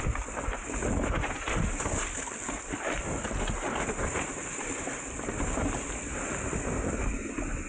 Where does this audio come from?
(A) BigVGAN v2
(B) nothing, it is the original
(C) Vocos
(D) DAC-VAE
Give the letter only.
B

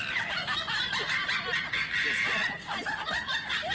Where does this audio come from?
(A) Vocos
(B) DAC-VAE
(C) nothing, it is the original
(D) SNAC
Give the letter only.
C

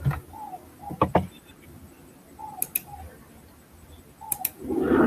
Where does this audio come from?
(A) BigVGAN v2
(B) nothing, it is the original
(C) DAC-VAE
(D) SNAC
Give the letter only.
B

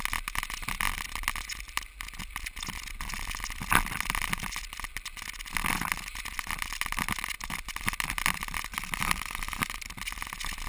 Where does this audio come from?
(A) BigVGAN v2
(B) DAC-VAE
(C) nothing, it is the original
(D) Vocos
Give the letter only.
C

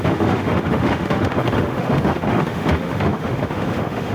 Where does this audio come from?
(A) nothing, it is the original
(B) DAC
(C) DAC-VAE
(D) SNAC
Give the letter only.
C